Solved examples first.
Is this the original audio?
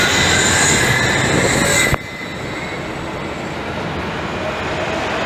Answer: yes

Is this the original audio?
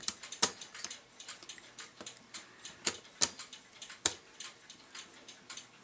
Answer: no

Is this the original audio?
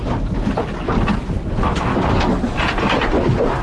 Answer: yes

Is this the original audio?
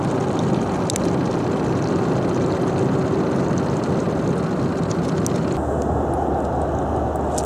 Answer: yes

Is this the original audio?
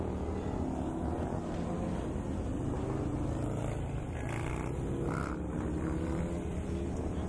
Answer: yes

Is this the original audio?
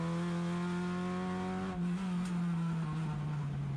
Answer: yes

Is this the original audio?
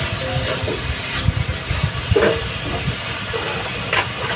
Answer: yes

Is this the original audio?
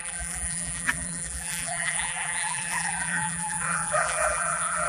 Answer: no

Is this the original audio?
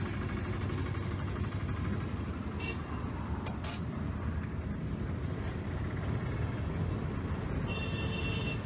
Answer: yes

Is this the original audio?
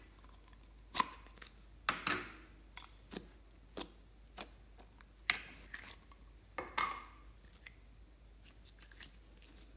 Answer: yes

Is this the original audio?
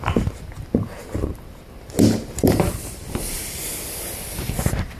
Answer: no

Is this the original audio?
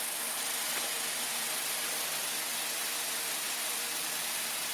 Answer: no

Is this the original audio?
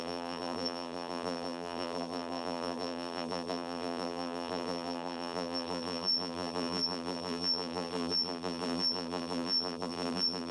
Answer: no